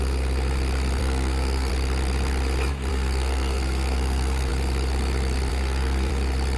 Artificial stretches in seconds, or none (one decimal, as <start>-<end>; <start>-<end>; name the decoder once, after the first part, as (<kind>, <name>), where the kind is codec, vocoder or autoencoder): 1.0-1.7 (codec, SNAC); 2.9-4.5; 5.5-6.1